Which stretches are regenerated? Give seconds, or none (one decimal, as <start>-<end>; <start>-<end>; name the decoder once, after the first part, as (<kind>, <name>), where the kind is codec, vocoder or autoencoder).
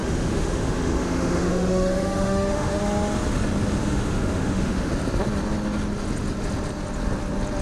0.0-2.8 (autoencoder, DAC-VAE); 3.8-4.9